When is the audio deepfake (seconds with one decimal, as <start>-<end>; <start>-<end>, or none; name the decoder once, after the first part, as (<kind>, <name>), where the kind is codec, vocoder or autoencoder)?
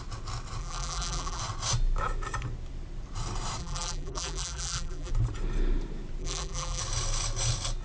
0.6-1.4 (vocoder, BigVGAN v2); 3.6-5.1; 6.2-6.8